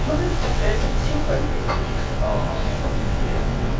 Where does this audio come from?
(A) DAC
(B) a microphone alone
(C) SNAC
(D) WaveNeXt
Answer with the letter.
D